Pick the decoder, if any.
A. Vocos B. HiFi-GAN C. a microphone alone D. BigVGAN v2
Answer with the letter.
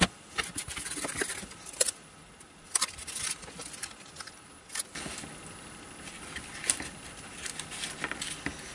C